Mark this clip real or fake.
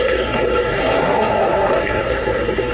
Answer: fake